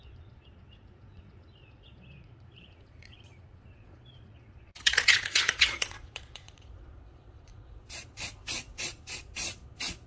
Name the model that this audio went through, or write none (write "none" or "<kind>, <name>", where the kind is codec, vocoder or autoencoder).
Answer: vocoder, Vocos